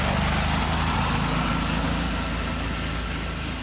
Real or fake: real